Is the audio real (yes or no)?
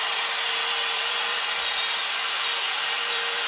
no